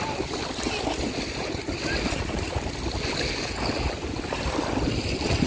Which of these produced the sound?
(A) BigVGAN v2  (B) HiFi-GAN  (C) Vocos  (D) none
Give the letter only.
D